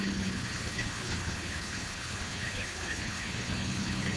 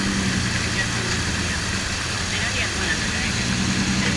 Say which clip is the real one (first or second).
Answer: second